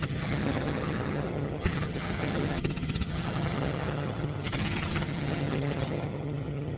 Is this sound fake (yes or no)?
yes